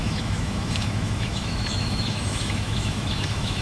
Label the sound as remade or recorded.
remade